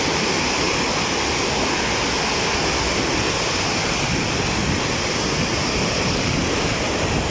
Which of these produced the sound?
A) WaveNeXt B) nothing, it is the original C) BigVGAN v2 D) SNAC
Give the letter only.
B